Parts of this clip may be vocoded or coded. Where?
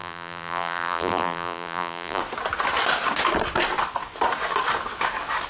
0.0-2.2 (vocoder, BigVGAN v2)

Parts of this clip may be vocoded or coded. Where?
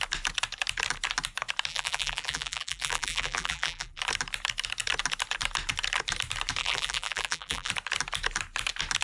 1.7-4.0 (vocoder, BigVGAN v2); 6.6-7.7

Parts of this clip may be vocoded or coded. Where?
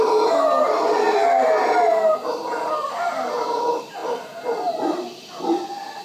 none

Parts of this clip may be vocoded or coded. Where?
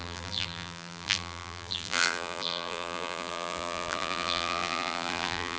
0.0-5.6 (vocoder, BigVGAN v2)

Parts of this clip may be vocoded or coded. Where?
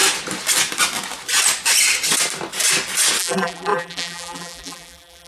3.2-5.3 (vocoder, BigVGAN v2)